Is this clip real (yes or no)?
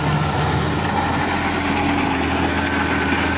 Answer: yes